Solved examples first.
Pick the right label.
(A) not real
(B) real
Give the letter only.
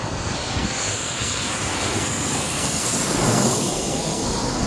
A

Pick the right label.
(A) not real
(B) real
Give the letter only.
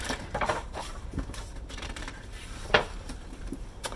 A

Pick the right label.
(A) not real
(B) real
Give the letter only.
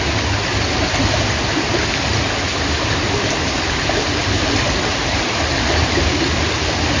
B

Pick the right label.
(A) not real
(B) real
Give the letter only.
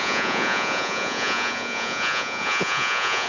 A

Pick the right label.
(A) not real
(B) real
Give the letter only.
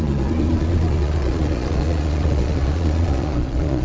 A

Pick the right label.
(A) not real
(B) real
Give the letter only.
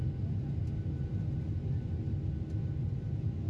B